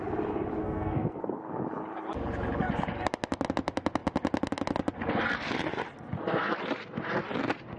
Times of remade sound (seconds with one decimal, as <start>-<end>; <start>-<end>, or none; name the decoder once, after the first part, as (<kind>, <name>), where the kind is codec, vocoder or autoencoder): 0.6-1.4 (codec, SNAC)